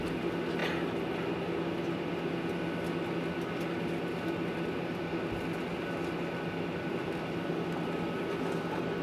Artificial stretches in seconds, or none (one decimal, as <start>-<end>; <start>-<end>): none

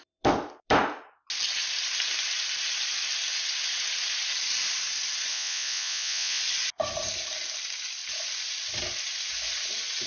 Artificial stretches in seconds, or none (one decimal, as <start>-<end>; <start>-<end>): 5.3-6.4

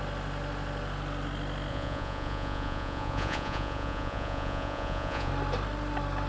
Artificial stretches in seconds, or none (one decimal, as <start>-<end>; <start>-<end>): 1.7-5.3

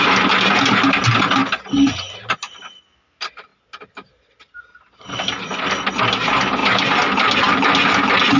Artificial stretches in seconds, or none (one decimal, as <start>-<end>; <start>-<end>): none